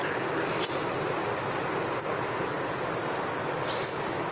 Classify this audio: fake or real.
real